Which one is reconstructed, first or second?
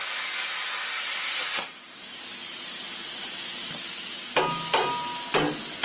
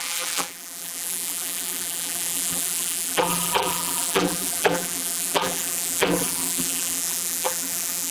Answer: second